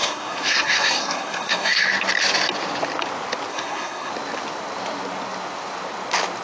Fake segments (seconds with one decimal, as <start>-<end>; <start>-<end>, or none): 0.0-1.8; 3.5-4.1